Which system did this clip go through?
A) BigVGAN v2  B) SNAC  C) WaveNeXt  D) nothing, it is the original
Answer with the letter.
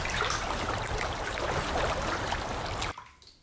D